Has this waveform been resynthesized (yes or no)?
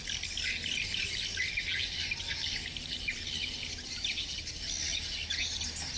no